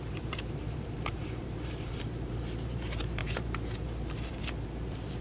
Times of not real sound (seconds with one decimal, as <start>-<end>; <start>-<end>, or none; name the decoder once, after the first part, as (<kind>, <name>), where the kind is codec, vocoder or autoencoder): 0.0-5.2 (vocoder, BigVGAN v2)